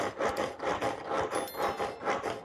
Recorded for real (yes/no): yes